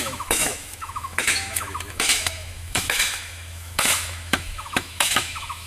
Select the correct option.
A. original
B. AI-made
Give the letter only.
B